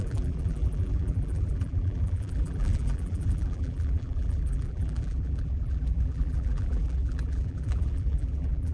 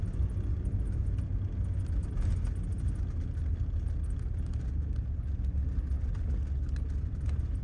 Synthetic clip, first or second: first